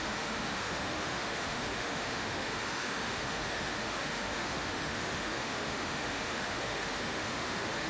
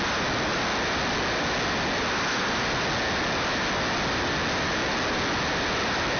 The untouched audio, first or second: second